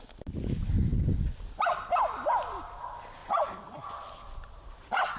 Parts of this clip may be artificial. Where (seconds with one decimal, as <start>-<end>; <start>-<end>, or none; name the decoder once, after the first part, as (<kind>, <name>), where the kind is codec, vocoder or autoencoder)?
none